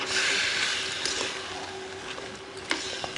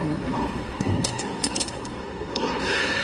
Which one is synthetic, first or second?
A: second